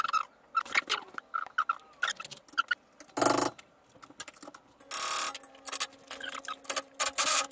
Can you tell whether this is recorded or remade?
recorded